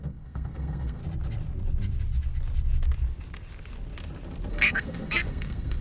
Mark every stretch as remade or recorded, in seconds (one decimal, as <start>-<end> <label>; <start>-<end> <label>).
0.0-1.0 remade; 1.0-4.5 recorded; 4.5-5.8 remade